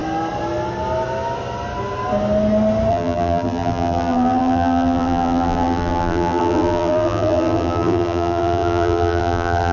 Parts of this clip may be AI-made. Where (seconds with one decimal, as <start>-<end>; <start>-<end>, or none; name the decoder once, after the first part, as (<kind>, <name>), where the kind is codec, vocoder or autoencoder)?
2.9-9.7 (vocoder, BigVGAN v2)